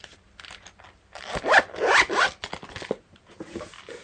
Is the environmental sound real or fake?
real